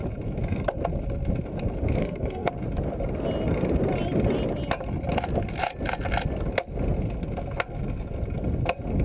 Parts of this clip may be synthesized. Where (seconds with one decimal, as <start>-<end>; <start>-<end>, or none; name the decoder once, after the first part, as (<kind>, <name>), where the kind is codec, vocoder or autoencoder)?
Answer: 2.0-2.5 (codec, SNAC)